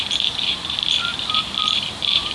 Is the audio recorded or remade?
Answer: remade